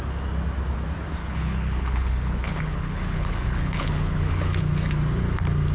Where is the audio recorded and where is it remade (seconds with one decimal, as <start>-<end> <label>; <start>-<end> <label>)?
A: 0.0-1.2 recorded; 1.2-4.6 remade; 4.6-5.7 recorded